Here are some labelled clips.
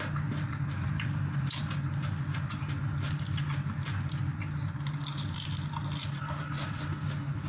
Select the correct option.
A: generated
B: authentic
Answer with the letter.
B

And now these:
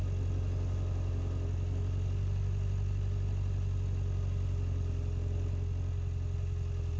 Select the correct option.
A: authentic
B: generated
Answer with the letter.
A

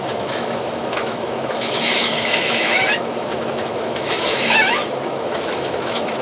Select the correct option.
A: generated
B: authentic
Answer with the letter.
A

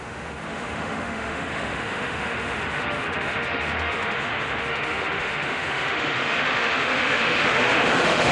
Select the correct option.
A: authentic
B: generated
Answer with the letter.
B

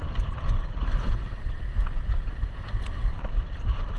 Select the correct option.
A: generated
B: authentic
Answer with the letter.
B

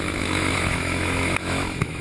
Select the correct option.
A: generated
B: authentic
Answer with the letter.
A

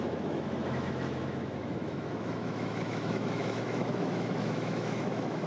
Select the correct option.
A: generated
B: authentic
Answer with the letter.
A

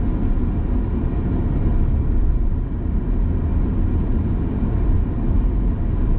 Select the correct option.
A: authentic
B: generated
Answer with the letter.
A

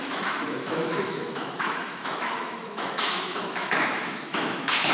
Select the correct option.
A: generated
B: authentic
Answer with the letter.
A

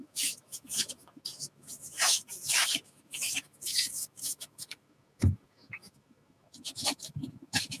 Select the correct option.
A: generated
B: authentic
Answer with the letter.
A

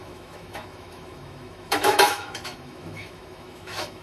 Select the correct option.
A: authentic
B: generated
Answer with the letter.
B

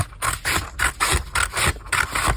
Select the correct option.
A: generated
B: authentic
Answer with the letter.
B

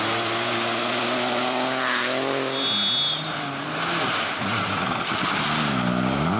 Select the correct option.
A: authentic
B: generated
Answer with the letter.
A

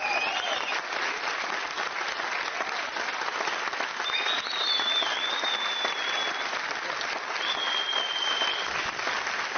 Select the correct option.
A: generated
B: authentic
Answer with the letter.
B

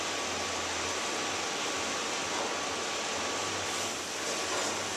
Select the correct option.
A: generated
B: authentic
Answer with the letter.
B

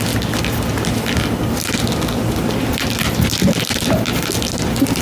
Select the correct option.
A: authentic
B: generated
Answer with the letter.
A